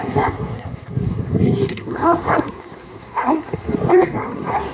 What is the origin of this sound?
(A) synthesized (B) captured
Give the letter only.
A